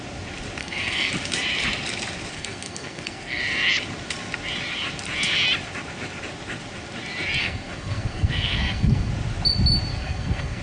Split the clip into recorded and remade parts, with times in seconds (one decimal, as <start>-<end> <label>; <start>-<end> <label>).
0.0-0.6 recorded; 0.6-1.1 remade; 1.1-2.3 recorded; 2.3-3.4 remade; 3.4-7.4 recorded; 7.4-9.1 remade; 9.1-9.9 recorded; 9.9-10.6 remade

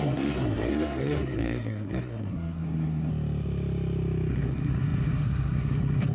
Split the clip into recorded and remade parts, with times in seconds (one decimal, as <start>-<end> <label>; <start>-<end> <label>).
0.0-3.1 remade; 3.1-4.3 recorded; 4.3-6.1 remade

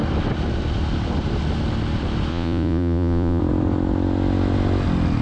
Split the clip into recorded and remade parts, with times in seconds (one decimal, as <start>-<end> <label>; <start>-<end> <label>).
0.0-2.3 recorded; 2.3-3.4 remade; 3.4-5.2 recorded

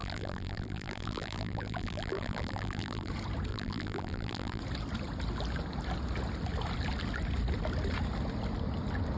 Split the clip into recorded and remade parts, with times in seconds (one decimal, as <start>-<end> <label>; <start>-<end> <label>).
0.0-3.1 remade; 3.1-3.5 recorded; 3.5-4.6 remade; 4.6-9.2 recorded

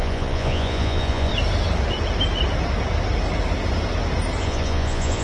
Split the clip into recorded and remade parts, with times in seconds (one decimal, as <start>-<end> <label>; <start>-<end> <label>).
0.0-1.3 remade; 1.3-4.4 recorded; 4.4-5.2 remade

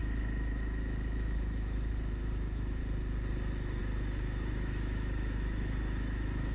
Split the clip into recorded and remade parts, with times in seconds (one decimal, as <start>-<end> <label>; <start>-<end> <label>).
0.0-2.8 remade; 2.8-3.8 recorded; 3.8-6.5 remade